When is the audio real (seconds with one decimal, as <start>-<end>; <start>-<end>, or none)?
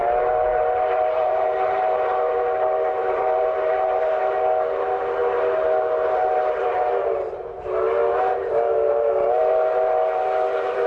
0.0-0.5; 2.0-3.0; 4.2-10.9